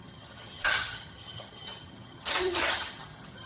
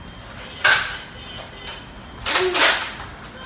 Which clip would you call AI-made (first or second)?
first